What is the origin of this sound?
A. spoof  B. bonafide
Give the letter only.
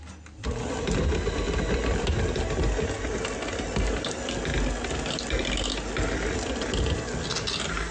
B